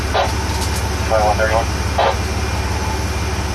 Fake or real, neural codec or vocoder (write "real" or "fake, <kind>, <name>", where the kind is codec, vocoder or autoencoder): real